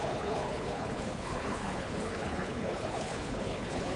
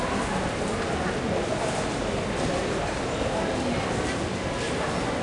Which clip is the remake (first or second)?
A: first